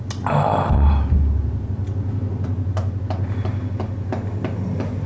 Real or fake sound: real